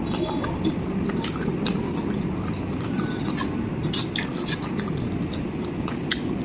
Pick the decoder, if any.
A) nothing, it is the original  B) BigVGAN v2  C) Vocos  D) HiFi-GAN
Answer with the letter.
A